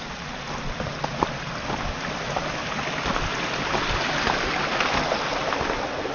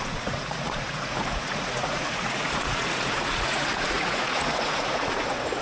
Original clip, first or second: first